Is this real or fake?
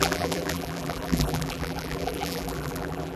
fake